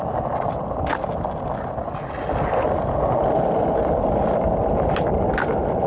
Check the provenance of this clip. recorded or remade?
recorded